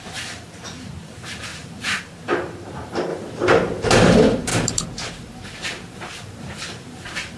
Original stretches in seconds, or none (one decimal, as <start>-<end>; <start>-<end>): 3.1-3.9